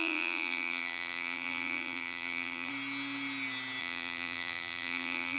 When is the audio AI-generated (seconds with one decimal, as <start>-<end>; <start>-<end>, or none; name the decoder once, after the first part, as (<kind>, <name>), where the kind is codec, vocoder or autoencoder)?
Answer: 0.0-2.7 (vocoder, BigVGAN v2); 3.8-5.4

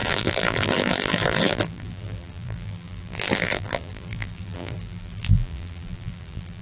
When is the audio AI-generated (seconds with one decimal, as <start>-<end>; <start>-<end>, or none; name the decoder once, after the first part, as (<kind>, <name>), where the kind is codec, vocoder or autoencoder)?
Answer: 0.0-6.6 (vocoder, BigVGAN v2)

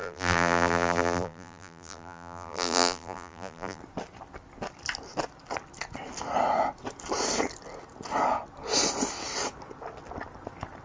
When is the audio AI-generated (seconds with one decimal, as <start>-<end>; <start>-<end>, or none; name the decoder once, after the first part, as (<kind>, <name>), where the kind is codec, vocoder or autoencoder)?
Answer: 0.0-3.8 (vocoder, BigVGAN v2)

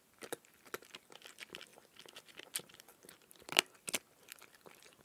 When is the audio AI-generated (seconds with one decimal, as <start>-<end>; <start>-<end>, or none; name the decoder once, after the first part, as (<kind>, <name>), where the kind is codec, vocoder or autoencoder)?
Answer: none

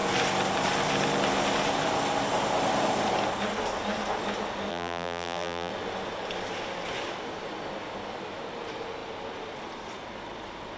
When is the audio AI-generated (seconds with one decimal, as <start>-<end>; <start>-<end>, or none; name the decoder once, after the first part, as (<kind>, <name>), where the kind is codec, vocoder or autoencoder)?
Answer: 4.7-5.7 (vocoder, BigVGAN v2)

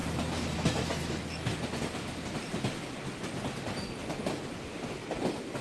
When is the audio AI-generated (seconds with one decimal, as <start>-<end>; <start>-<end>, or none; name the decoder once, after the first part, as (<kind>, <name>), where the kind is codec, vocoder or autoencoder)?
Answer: none

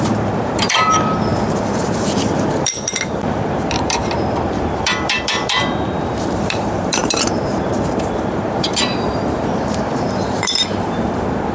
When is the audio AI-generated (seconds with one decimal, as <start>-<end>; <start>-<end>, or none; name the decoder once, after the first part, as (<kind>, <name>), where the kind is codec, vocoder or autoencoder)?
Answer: 0.0-11.5 (vocoder, BigVGAN v2)